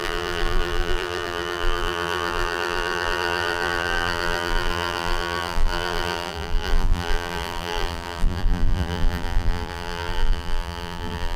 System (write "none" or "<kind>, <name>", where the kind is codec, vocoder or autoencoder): vocoder, BigVGAN v2